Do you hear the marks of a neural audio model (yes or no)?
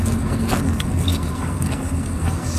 yes